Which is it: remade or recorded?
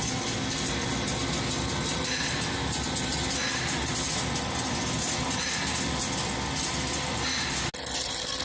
recorded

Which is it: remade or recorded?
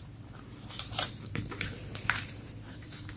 remade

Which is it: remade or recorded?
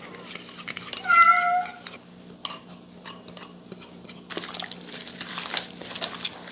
recorded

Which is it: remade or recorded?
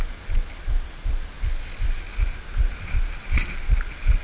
recorded